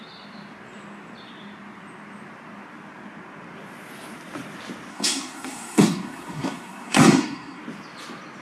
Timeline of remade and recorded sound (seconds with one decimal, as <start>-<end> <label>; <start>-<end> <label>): 0.0-4.9 recorded; 4.9-7.6 remade; 7.6-8.4 recorded